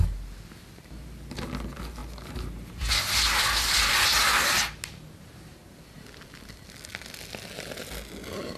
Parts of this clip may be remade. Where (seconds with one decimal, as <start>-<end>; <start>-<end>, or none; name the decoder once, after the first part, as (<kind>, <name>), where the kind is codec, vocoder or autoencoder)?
none